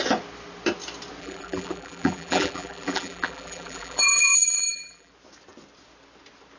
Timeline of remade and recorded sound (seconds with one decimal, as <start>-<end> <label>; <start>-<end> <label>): 0.0-1.2 recorded; 1.2-5.1 remade; 5.1-6.6 recorded